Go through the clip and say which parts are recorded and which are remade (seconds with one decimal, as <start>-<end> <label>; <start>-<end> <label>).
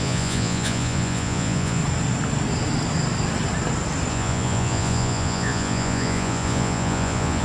0.0-1.8 remade; 1.8-4.1 recorded; 4.1-7.4 remade